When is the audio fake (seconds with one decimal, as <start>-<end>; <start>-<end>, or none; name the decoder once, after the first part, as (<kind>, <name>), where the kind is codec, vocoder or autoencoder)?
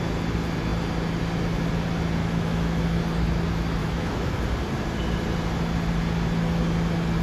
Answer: 2.2-2.8 (autoencoder, DAC-VAE); 3.8-4.4